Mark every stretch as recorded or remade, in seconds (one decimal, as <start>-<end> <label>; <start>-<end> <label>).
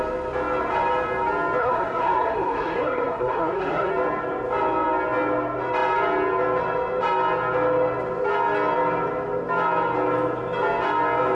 0.0-1.6 recorded; 1.6-3.9 remade; 3.9-11.3 recorded